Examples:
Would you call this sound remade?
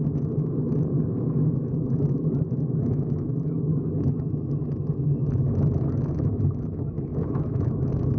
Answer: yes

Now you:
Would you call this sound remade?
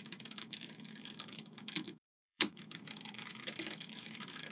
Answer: yes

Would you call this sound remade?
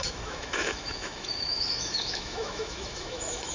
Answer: yes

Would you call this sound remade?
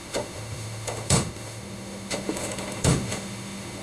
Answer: yes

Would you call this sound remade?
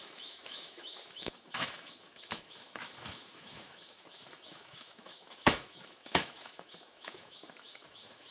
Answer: yes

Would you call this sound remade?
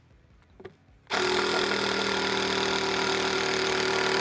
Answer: no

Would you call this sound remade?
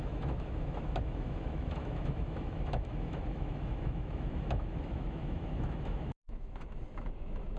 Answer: yes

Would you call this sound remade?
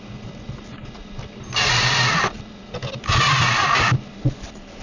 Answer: no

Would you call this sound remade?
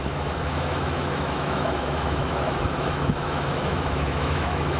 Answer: yes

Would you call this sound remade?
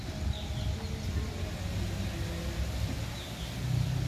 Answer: no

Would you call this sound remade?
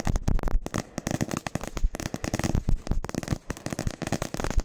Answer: no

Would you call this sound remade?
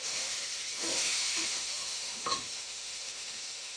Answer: yes